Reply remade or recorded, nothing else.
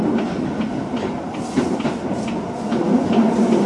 recorded